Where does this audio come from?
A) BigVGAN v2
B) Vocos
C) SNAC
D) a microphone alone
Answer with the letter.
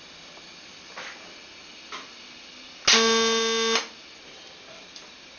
D